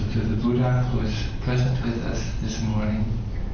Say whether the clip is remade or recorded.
recorded